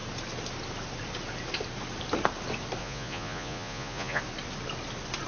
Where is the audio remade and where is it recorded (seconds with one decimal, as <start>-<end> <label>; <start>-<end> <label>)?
0.0-2.8 recorded; 2.8-4.2 remade; 4.2-5.3 recorded